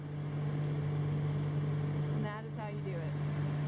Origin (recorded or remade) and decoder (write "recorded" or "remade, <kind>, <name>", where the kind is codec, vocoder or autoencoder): recorded